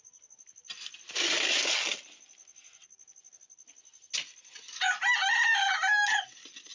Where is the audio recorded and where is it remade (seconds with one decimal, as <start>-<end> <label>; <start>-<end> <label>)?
0.0-6.7 recorded